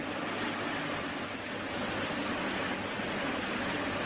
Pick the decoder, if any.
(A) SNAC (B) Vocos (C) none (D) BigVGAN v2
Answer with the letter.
C